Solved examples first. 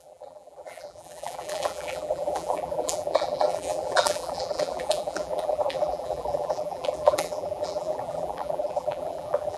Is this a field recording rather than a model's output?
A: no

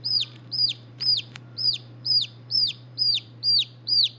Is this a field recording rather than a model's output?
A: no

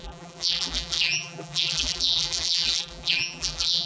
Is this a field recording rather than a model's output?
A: no